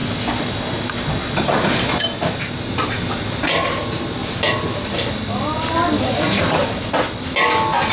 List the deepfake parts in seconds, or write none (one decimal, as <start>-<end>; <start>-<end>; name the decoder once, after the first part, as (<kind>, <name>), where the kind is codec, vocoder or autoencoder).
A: none